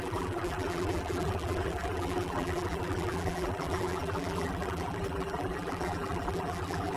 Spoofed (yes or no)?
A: yes